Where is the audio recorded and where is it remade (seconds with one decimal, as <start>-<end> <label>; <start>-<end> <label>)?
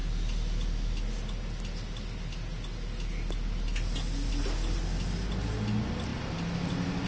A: 0.0-7.1 recorded